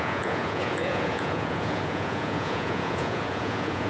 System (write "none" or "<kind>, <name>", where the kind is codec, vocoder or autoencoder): vocoder, Vocos